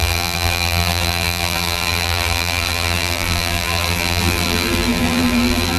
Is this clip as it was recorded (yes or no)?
no